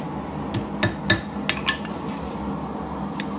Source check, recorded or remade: recorded